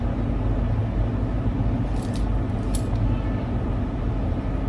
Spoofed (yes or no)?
no